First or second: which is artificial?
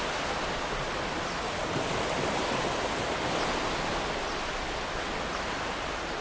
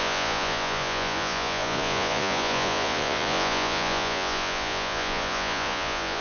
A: second